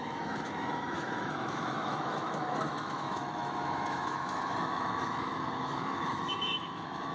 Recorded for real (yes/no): no